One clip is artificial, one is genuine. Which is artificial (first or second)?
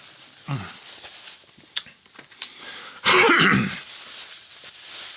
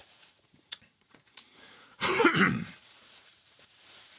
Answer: second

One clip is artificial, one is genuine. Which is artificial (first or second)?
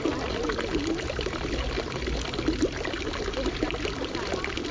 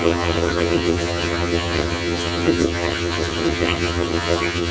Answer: second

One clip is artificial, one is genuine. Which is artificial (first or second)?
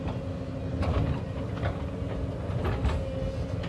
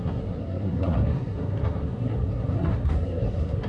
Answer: second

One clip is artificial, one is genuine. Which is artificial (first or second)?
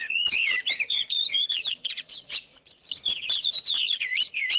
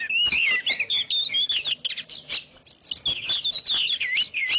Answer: first